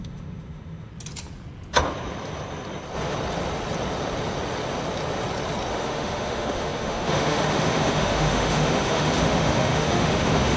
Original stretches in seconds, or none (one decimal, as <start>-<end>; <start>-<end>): 0.9-5.7